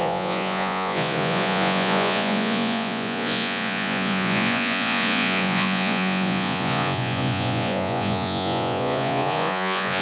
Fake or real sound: fake